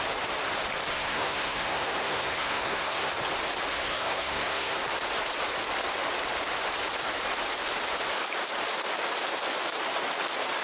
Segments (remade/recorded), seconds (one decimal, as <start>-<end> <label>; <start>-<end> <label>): 0.0-0.9 recorded; 0.9-3.1 remade; 3.1-3.7 recorded; 3.7-4.8 remade; 4.8-10.6 recorded

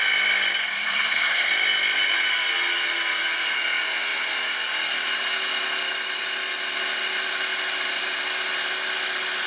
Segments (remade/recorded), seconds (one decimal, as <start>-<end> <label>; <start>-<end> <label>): 0.0-0.6 recorded; 0.6-1.5 remade; 1.5-9.5 recorded

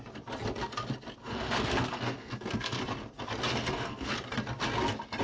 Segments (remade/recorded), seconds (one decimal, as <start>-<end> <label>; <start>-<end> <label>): 0.0-1.2 recorded; 1.2-2.8 remade; 2.8-3.5 recorded; 3.5-4.1 remade; 4.1-5.2 recorded

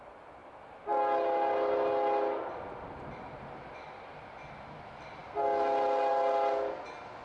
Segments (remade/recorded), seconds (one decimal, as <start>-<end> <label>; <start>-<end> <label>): 0.0-7.2 recorded

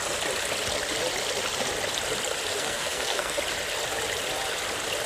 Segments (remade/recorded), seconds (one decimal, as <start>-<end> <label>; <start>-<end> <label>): 0.0-2.5 recorded; 2.5-3.4 remade; 3.4-5.1 recorded

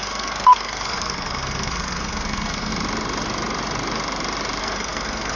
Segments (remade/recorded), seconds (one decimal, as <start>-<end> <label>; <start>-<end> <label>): 0.0-2.7 remade; 2.7-4.6 recorded; 4.6-5.4 remade

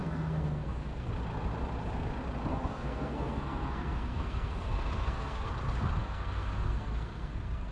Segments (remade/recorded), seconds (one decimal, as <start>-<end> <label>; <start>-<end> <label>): 0.0-1.1 remade; 1.1-2.5 recorded; 2.5-5.5 remade; 5.5-6.0 recorded; 6.0-7.7 remade

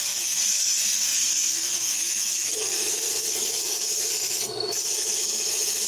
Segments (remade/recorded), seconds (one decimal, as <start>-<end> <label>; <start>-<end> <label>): 0.0-5.9 remade